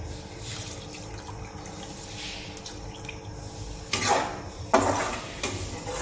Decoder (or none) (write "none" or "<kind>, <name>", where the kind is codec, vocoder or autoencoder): none